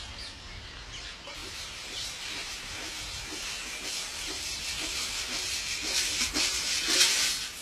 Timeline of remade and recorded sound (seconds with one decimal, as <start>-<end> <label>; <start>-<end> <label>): 0.0-1.4 recorded; 1.4-2.7 remade; 2.7-4.1 recorded; 4.1-4.6 remade; 4.6-7.6 recorded